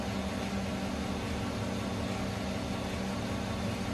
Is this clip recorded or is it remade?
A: recorded